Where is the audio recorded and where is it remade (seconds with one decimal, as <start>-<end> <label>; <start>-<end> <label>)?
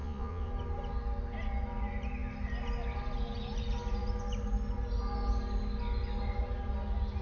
0.0-0.5 remade; 0.5-7.2 recorded